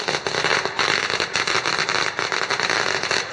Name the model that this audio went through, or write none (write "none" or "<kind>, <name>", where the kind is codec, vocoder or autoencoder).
none